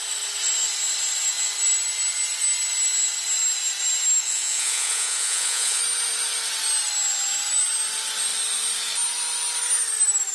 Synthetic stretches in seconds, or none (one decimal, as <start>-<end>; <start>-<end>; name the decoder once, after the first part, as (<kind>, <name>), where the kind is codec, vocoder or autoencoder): 4.2-5.8 (vocoder, Vocos)